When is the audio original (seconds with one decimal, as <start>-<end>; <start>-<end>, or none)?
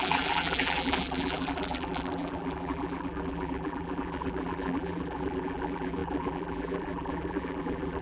none